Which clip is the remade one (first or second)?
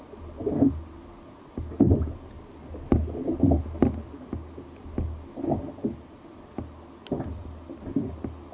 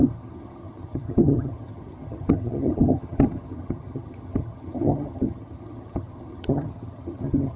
second